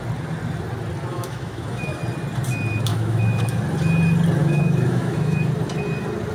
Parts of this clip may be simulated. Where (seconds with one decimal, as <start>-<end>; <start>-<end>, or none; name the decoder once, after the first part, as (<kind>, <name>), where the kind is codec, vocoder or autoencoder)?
1.1-2.0 (autoencoder, DAC-VAE); 2.9-3.6; 4.4-5.5

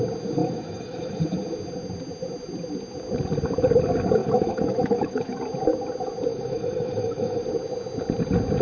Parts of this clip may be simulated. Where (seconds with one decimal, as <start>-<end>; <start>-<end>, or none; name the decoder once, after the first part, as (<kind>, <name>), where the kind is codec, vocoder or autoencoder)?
0.4-1.2 (autoencoder, DAC-VAE); 4.2-5.4; 6.3-7.4

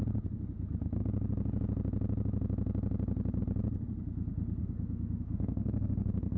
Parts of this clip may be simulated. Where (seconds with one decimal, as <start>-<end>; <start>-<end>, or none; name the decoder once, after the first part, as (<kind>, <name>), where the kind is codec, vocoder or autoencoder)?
4.6-6.4 (autoencoder, DAC-VAE)

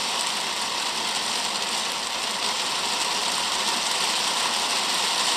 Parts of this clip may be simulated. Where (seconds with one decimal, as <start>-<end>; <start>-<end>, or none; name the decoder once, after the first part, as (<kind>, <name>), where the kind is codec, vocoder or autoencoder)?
none

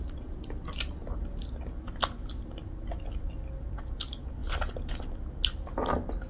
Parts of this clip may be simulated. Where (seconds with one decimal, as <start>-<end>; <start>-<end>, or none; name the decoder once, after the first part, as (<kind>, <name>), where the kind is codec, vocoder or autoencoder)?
none

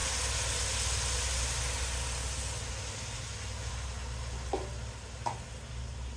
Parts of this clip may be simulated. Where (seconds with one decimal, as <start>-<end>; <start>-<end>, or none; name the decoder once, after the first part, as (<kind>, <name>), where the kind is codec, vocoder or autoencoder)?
none

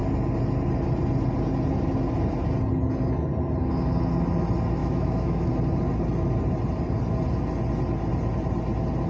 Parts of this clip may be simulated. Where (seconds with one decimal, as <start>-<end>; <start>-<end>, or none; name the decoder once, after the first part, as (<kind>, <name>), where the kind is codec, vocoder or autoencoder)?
4.8-5.5 (autoencoder, DAC-VAE)

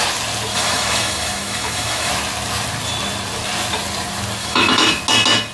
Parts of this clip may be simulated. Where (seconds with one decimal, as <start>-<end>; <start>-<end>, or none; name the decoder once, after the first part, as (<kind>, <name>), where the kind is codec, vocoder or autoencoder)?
0.5-2.1 (autoencoder, DAC-VAE); 4.4-5.0